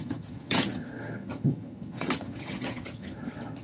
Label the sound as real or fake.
fake